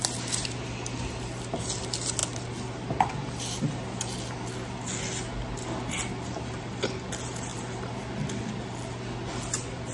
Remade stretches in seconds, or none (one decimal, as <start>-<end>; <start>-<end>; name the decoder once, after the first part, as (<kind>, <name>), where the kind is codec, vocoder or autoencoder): none